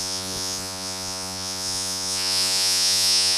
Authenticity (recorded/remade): remade